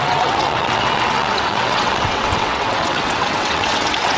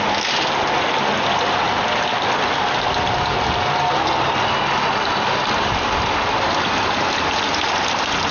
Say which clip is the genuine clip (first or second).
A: second